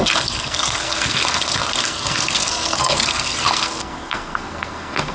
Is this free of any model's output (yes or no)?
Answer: no